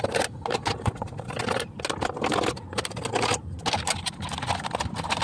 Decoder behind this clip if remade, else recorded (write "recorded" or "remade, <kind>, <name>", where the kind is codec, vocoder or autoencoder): recorded